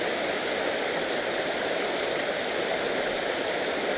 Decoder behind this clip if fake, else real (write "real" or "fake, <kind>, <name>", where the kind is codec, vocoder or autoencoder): real